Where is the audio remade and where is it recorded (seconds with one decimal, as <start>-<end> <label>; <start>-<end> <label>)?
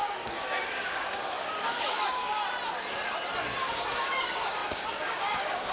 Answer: 0.0-2.4 remade; 2.4-3.6 recorded; 3.6-5.7 remade